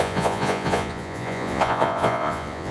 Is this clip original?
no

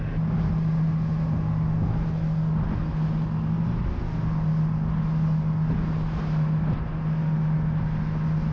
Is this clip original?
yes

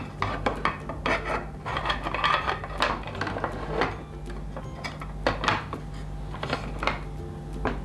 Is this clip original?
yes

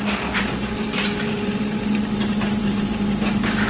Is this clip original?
yes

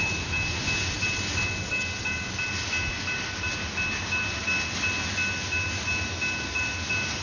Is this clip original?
yes